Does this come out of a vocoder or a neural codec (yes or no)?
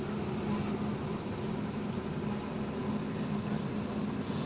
no